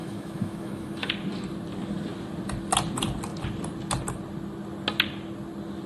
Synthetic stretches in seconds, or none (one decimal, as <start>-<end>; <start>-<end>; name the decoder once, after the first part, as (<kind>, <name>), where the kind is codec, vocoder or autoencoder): 0.0-1.1 (autoencoder, DAC-VAE)